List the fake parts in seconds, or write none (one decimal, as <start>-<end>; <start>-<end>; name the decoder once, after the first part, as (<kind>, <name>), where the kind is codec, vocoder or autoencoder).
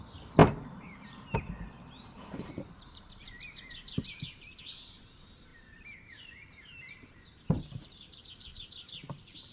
0.0-9.5 (vocoder, BigVGAN v2)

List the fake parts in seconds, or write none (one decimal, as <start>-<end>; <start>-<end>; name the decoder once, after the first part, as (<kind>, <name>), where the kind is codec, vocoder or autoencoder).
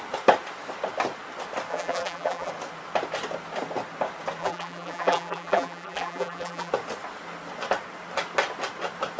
1.7-2.5 (vocoder, BigVGAN v2); 4.4-6.7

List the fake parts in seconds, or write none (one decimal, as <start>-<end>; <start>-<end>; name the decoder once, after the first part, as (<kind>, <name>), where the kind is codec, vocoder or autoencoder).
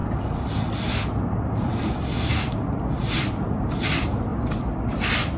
none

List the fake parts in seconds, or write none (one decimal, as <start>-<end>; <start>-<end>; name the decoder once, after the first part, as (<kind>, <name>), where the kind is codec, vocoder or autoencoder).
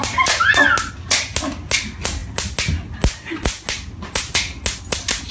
none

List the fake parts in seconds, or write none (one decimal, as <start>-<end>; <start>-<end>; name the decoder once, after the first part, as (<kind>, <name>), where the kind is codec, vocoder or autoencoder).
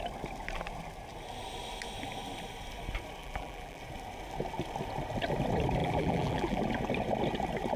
3.2-3.8 (vocoder, BigVGAN v2); 5.8-6.6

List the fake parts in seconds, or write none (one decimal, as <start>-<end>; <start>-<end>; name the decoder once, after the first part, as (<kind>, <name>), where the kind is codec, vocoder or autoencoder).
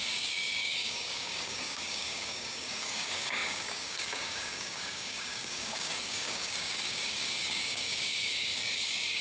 0.0-9.2 (codec, DAC)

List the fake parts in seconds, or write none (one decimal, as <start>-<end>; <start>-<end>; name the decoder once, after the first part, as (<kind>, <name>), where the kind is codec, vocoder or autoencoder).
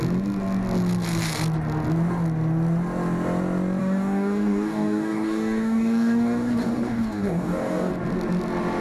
3.8-7.9 (codec, DAC)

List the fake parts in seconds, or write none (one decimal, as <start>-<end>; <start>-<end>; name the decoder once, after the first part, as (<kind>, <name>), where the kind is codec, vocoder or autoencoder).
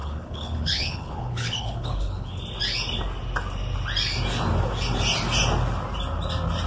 0.0-2.4 (codec, HILCodec)